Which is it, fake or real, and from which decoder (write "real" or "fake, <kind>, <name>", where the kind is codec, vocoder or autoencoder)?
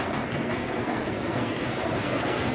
fake, codec, SNAC